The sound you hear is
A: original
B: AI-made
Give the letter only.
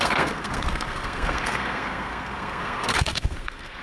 B